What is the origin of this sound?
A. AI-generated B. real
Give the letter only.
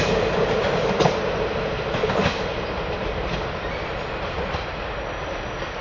B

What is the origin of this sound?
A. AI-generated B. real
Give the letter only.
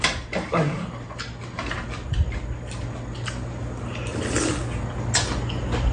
B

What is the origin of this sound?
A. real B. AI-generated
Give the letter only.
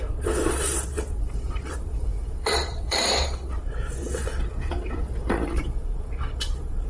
B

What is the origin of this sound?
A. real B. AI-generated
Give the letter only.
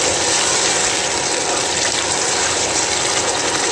A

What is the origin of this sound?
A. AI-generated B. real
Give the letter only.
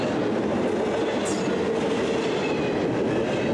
B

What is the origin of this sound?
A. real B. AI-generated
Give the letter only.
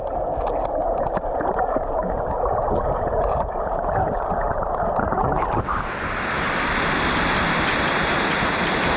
A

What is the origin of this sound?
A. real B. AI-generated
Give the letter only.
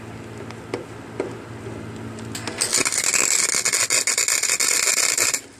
A